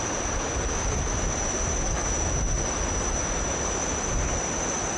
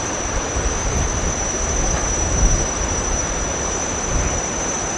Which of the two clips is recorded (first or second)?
first